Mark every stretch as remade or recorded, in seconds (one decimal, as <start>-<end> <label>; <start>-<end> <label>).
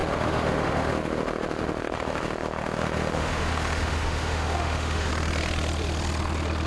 0.0-5.1 remade; 5.1-6.7 recorded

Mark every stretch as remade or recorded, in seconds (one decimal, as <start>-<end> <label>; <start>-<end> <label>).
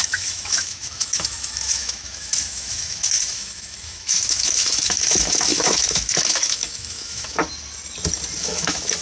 0.0-7.4 remade; 7.4-8.4 recorded; 8.4-9.0 remade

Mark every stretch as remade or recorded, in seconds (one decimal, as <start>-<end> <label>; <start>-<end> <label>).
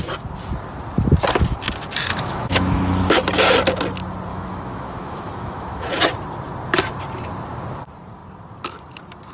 0.0-2.1 recorded; 2.1-3.1 remade; 3.1-4.3 recorded; 4.3-5.9 remade; 5.9-9.3 recorded